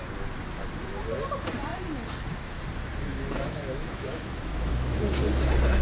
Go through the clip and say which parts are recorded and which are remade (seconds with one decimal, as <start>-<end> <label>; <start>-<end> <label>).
0.0-3.1 recorded; 3.1-4.7 remade; 4.7-5.8 recorded